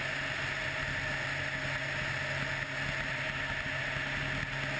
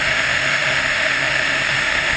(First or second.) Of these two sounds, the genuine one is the first